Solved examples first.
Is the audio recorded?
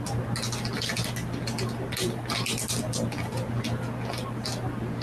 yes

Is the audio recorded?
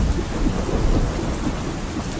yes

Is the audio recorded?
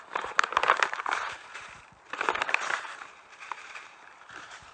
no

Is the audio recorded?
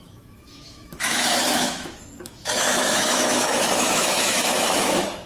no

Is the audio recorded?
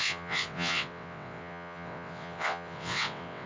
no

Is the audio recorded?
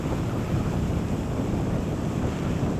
yes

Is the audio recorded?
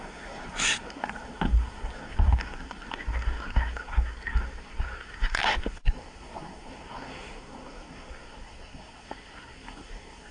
no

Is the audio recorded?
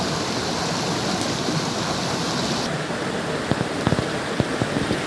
yes